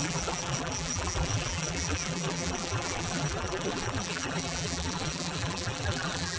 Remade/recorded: remade